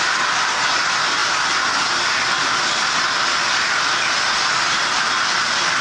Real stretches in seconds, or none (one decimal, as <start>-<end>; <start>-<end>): 0.0-5.8